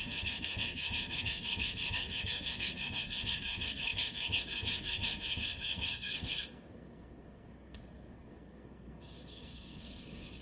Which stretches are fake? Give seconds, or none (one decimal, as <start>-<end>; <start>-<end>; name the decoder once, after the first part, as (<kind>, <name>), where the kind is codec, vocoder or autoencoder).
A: 0.0-10.4 (codec, SNAC)